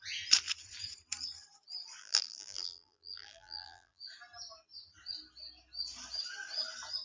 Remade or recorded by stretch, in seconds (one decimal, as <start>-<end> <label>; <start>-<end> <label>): 0.0-2.0 recorded; 2.0-4.0 remade; 4.0-7.0 recorded